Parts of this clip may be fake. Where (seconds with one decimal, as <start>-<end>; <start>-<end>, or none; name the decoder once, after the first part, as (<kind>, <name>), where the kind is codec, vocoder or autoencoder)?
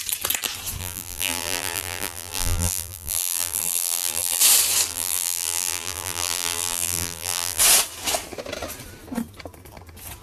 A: 0.8-4.4 (vocoder, BigVGAN v2); 4.9-7.6